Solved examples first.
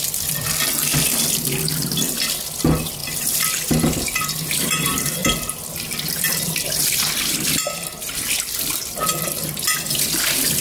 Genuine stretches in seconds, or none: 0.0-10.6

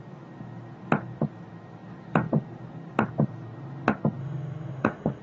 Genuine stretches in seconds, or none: 0.0-4.2

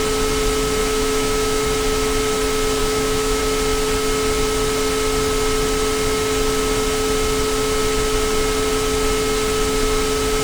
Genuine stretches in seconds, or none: 0.0-0.8; 1.6-2.8; 3.4-10.4

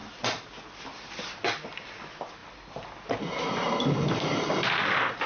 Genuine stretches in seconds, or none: 0.0-5.3

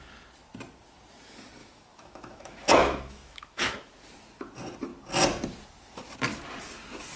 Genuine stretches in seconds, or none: 0.0-1.6; 3.9-7.2

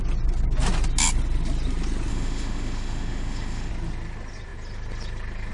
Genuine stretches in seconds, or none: 0.0-2.1; 3.7-5.5